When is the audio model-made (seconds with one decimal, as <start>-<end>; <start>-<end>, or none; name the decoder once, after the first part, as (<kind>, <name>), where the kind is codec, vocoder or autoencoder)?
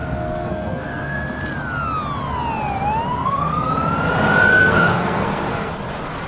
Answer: 0.0-1.2 (codec, SNAC); 3.1-3.7; 4.5-5.7